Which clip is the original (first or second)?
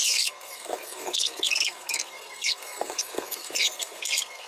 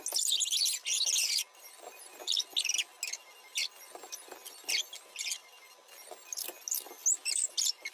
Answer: second